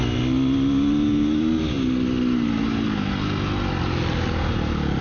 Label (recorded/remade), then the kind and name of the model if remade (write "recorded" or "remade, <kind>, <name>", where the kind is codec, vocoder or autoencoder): recorded